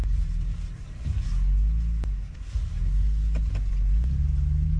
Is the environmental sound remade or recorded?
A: recorded